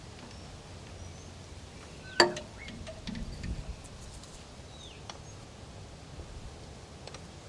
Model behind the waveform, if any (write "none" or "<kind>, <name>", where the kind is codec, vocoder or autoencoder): none